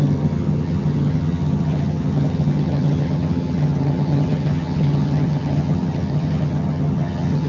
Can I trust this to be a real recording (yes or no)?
no